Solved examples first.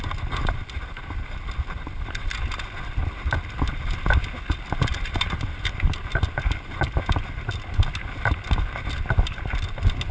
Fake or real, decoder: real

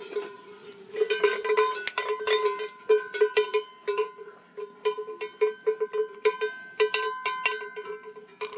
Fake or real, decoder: real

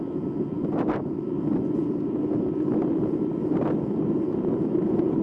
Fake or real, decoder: real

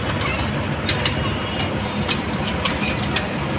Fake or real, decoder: real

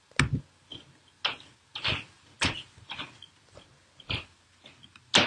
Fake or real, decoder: real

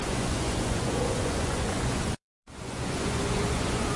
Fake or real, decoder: fake, vocoder, Vocos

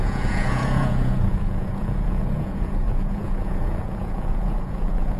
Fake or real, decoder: fake, vocoder, Vocos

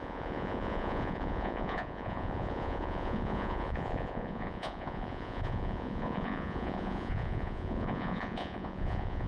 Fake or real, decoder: fake, vocoder, Vocos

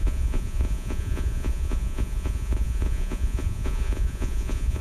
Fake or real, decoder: fake, vocoder, Vocos